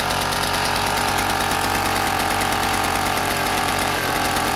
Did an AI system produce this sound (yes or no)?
yes